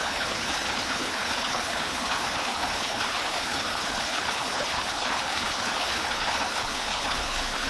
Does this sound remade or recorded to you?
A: remade